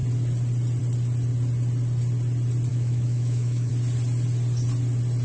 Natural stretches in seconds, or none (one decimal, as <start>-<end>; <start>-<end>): 0.0-2.7; 3.7-5.2